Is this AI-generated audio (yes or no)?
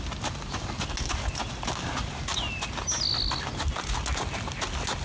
no